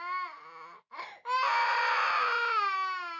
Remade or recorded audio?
recorded